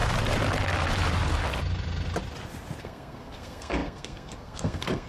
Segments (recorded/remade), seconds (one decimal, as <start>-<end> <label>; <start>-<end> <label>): 0.0-2.8 recorded; 2.8-5.1 remade